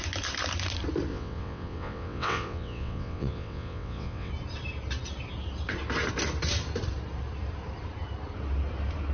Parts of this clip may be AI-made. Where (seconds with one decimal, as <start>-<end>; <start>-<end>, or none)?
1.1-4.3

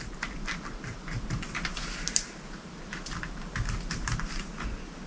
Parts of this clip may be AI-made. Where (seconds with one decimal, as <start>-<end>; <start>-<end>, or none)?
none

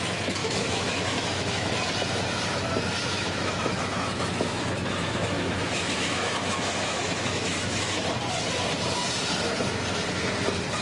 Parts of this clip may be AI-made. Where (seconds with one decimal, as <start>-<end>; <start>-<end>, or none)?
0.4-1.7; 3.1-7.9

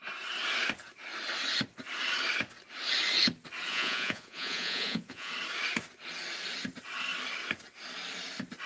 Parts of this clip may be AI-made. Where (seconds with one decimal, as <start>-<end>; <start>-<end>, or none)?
3.7-5.3

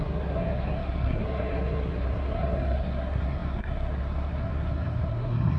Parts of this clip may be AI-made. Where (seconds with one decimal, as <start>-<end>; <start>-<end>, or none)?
0.0-5.6

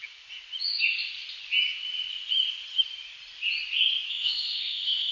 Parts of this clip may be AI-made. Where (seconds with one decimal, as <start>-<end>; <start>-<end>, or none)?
4.1-5.1